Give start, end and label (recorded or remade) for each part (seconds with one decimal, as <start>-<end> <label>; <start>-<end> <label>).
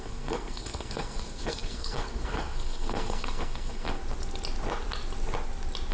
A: 0.0-4.0 remade; 4.0-5.9 recorded